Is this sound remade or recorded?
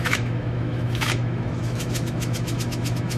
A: remade